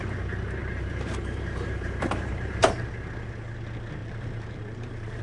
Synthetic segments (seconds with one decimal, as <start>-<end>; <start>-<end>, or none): 0.6-2.9; 4.0-5.2